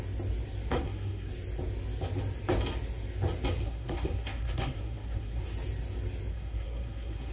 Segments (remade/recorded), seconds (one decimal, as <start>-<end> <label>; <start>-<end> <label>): 0.0-0.7 recorded; 0.7-1.3 remade; 1.3-3.6 recorded; 3.6-5.4 remade; 5.4-6.3 recorded; 6.3-7.3 remade